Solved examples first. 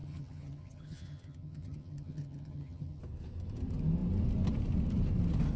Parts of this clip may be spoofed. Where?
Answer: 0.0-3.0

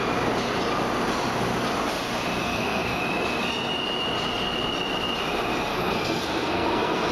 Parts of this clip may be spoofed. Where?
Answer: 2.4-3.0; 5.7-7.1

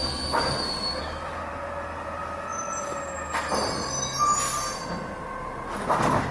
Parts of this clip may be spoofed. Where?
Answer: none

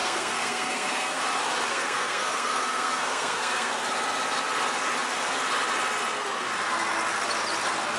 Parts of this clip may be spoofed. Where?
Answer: 0.0-1.2; 1.7-3.7

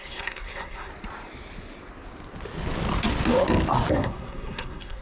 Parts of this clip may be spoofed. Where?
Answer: 0.0-0.9; 3.9-5.0